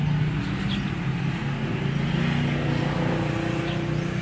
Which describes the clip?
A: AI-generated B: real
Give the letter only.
B